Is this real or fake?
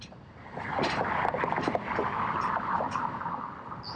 real